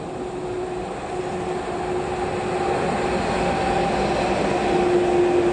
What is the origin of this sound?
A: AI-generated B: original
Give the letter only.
B